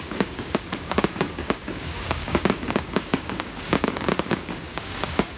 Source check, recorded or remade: remade